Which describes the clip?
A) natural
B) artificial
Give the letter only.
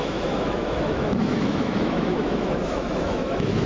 B